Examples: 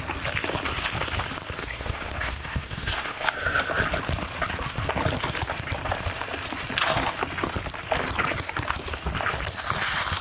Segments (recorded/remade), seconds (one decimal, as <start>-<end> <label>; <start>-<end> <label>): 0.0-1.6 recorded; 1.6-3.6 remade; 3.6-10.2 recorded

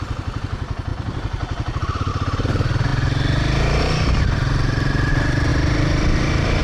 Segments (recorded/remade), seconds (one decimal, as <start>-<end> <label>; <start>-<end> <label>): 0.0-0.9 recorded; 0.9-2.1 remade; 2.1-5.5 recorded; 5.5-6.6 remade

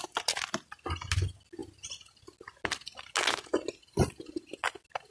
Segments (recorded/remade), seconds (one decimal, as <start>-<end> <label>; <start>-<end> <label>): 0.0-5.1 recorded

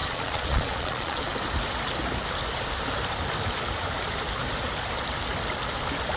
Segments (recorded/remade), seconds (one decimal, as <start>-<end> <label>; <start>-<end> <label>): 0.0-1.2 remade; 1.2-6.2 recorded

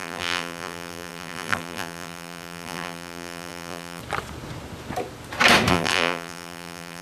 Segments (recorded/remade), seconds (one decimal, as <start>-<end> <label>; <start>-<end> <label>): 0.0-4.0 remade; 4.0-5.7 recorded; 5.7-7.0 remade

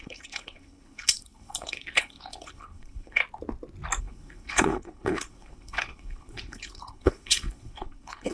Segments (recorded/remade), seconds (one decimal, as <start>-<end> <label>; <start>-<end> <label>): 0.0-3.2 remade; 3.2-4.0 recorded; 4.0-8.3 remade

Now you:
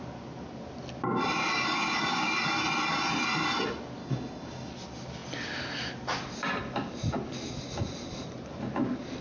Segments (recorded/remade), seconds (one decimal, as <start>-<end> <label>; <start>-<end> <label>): 0.0-1.5 recorded; 1.5-2.3 remade; 2.3-4.0 recorded; 4.0-4.7 remade; 4.7-9.2 recorded

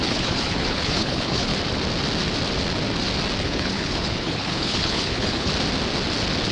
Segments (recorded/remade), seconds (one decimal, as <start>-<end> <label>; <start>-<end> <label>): 0.0-1.5 remade; 1.5-3.4 recorded; 3.4-5.5 remade; 5.5-6.5 recorded